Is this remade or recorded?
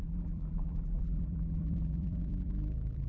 remade